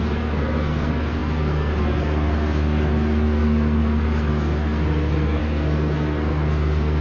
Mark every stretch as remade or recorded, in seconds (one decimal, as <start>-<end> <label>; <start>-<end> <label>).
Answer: 0.0-7.0 remade